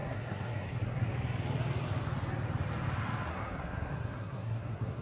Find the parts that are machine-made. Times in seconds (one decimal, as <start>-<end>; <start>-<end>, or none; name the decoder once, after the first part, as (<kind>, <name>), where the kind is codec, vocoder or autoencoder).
0.0-1.1 (codec, SNAC); 3.3-5.0